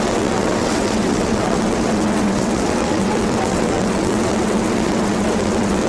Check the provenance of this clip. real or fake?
fake